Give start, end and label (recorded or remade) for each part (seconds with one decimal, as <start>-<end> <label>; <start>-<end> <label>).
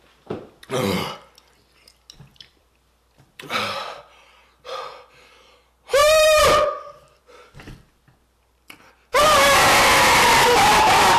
0.0-2.3 recorded; 2.3-3.6 remade; 3.6-6.0 recorded; 6.0-7.2 remade; 7.2-11.2 recorded